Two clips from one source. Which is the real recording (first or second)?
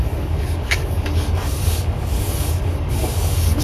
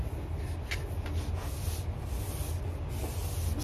second